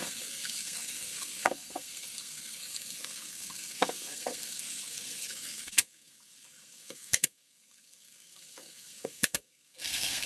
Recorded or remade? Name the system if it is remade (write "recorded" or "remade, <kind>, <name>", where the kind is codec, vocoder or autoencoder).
remade, codec, SNAC